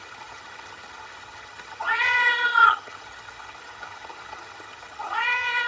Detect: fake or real fake